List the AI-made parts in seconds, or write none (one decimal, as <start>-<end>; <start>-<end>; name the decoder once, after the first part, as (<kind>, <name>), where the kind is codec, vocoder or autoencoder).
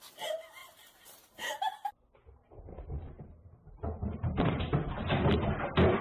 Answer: 0.6-1.9 (vocoder, BigVGAN v2)